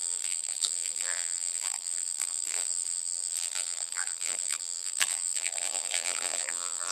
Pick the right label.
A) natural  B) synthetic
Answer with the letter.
B